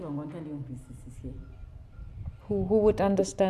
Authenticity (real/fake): real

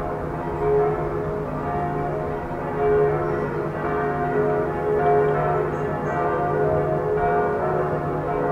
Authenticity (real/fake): real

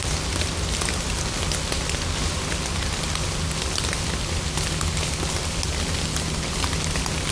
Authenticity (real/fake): real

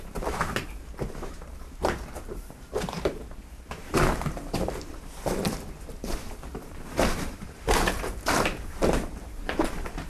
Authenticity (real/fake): fake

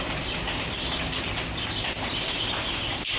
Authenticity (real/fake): real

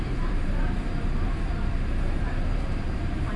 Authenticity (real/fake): fake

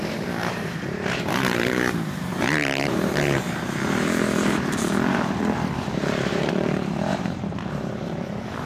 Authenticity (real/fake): fake